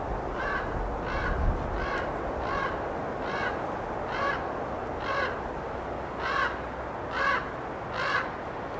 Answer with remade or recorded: recorded